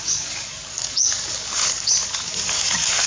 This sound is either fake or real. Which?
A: fake